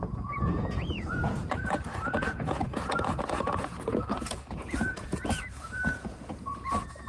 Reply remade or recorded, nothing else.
remade